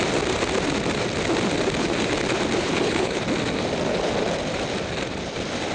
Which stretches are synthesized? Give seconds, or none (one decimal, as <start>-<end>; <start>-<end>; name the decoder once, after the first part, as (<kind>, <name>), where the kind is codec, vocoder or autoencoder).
2.6-3.2 (codec, HILCodec)